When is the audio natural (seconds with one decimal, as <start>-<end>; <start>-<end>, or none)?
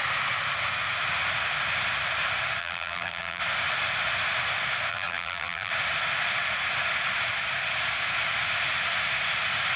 0.0-2.6; 3.4-4.9; 5.7-9.8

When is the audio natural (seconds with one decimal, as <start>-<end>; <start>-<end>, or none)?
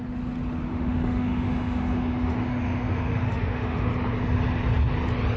0.0-0.7; 3.9-5.4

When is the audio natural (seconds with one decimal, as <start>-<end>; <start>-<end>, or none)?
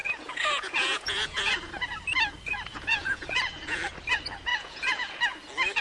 1.7-2.7; 3.8-4.5; 5.2-5.8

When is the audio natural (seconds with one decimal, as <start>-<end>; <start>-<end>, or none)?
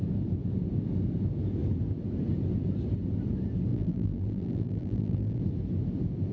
0.0-3.7; 5.4-6.3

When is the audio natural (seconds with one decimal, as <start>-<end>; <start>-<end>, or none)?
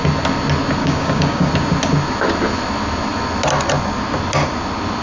0.0-0.8; 1.5-5.0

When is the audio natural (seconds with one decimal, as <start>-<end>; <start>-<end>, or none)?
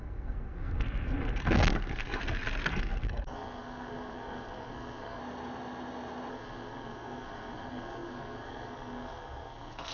2.2-2.7; 5.2-6.3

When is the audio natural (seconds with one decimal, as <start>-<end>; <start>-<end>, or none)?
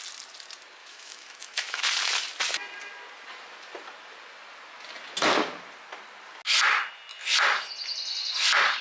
0.0-0.8; 1.8-8.8